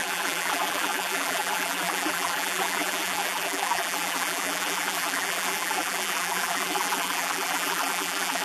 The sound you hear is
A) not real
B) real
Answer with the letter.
A